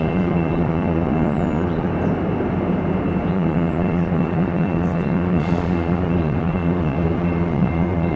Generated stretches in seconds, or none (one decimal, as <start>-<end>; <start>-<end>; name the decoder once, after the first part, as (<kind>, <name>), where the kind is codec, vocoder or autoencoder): 0.0-1.9 (vocoder, Vocos); 3.3-8.2